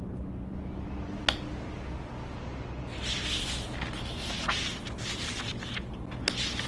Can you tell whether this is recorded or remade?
recorded